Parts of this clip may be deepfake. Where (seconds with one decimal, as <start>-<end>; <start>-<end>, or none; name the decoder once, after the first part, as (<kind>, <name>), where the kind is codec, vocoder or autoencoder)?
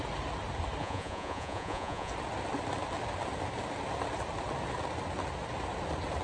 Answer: 0.8-2.1 (vocoder, Vocos)